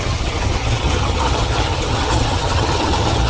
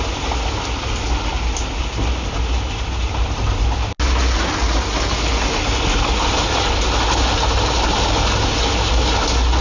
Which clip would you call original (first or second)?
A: second